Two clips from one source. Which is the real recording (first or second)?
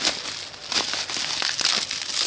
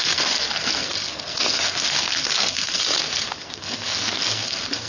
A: first